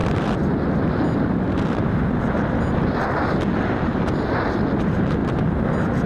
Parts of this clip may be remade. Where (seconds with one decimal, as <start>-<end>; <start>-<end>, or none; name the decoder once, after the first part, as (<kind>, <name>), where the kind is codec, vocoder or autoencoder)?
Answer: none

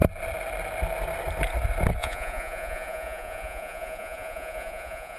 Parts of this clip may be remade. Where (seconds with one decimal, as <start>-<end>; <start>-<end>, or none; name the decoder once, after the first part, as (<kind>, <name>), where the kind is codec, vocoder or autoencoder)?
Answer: 2.0-5.2 (vocoder, Vocos)

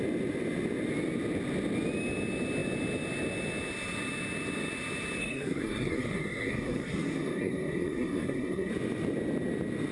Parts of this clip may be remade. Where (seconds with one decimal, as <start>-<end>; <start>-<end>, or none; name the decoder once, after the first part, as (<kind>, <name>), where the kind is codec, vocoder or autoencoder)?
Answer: 5.2-8.7 (codec, SNAC)